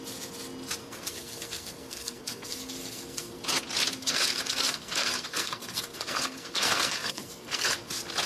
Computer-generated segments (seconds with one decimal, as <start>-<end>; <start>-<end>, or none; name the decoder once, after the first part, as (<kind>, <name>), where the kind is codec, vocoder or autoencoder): 0.8-3.4 (codec, SNAC); 4.0-7.9